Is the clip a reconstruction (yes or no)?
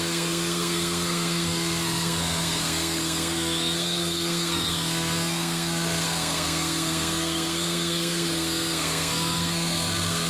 yes